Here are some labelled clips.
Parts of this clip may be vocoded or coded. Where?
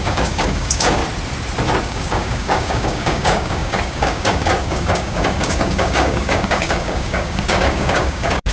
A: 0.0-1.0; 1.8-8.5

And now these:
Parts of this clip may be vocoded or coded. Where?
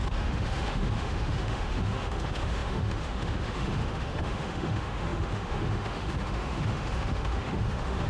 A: 0.0-8.1